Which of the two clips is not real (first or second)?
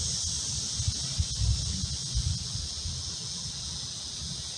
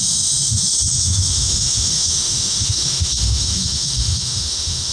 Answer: second